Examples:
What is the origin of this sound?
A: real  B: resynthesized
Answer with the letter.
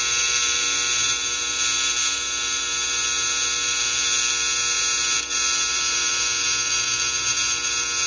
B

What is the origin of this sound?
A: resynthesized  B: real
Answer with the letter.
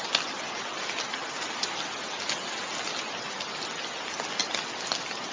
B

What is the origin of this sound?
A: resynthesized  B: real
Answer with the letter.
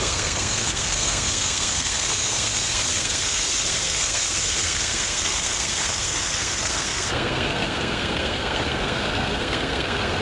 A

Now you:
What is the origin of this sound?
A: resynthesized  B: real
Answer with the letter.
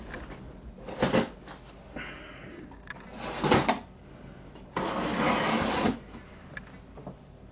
B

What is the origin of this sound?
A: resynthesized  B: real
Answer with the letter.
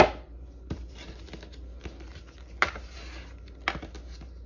B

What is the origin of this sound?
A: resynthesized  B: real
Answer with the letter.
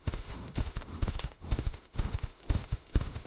A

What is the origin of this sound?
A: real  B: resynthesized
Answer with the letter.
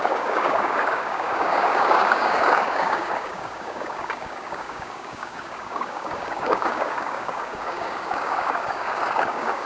B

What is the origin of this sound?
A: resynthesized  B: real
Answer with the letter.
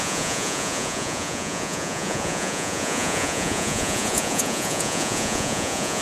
A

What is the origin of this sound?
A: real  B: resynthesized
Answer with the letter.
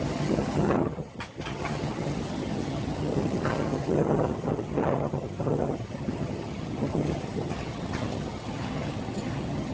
B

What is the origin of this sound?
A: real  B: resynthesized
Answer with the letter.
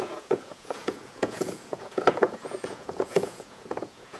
B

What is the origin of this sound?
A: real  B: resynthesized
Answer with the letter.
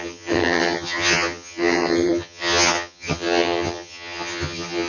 B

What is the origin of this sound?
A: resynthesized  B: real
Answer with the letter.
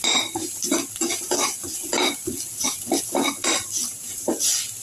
A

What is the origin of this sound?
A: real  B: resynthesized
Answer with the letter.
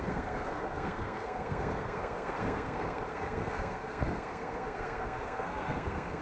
B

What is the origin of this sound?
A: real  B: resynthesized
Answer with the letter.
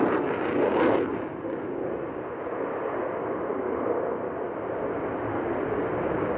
A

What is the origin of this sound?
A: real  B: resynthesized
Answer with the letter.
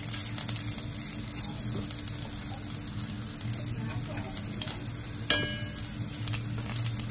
A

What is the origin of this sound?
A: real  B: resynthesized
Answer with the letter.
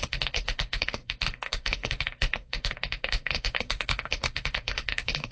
B